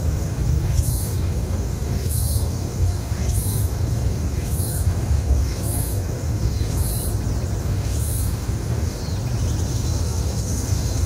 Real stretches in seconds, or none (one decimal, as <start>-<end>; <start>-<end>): 6.9-7.6; 9.0-9.7